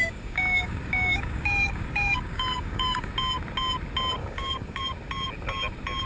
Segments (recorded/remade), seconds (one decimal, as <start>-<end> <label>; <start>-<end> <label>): 0.0-3.1 remade; 3.1-4.2 recorded; 4.2-4.8 remade; 4.8-6.1 recorded